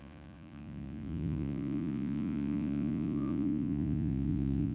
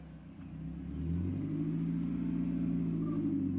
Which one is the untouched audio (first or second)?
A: second